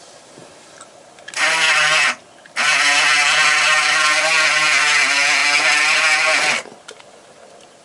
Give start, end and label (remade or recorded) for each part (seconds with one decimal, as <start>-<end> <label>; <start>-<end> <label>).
0.0-7.8 recorded